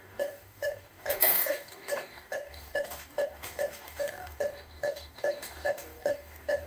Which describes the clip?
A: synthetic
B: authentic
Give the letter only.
A